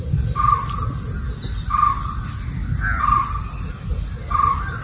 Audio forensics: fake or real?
real